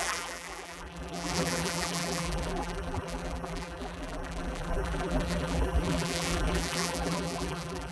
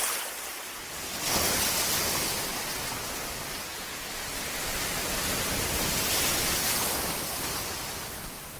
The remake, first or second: first